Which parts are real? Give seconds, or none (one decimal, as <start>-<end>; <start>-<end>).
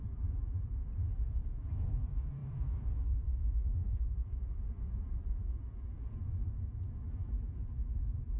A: 0.0-1.4; 1.9-8.4